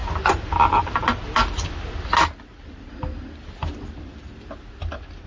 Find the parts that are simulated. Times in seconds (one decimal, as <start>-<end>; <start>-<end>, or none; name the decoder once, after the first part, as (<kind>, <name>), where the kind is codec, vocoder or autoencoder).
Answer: none